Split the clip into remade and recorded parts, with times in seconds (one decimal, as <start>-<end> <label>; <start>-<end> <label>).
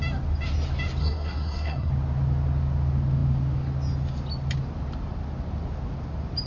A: 0.0-1.0 recorded; 1.0-1.9 remade; 1.9-6.5 recorded